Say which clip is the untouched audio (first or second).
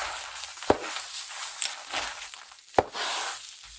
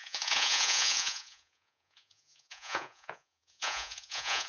first